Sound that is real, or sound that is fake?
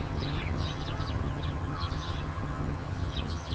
fake